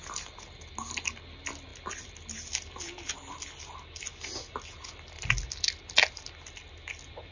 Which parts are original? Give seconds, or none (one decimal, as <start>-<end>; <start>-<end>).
0.0-7.3

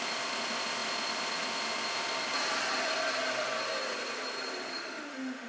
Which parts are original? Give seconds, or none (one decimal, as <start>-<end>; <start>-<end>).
0.0-4.7

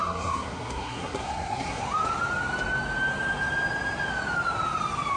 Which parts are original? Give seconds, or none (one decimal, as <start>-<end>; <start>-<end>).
1.8-5.2

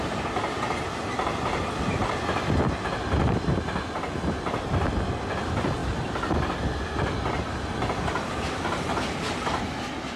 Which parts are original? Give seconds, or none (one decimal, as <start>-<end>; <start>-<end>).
0.0-10.2

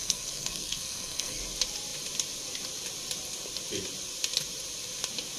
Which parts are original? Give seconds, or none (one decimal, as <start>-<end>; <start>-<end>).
1.4-5.4

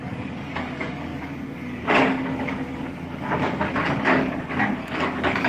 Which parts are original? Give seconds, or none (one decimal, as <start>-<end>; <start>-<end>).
none

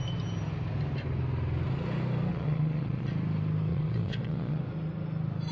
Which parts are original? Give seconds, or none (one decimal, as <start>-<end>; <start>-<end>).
0.0-2.3; 3.1-3.7; 4.6-5.5